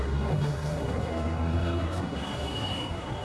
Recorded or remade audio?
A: remade